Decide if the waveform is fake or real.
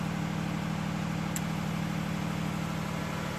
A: real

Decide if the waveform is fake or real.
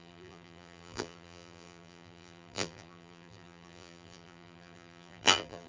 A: fake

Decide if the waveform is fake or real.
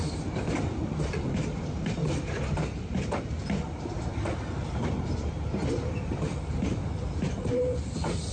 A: fake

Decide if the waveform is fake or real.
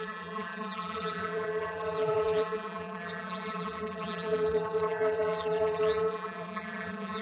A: fake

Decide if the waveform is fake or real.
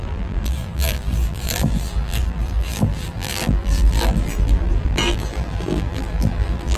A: fake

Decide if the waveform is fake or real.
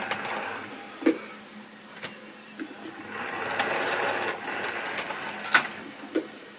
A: real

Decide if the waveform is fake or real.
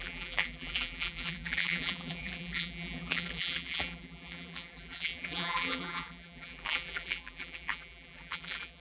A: fake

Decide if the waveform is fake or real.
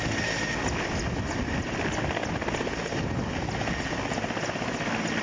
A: real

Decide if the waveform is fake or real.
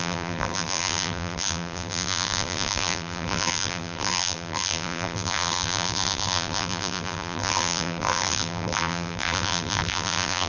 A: fake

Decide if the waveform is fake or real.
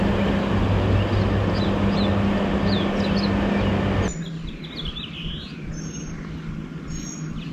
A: real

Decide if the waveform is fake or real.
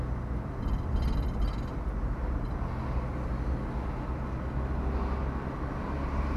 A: real